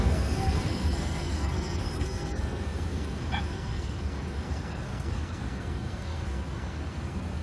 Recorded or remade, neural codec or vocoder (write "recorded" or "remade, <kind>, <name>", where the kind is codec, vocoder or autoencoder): remade, codec, SNAC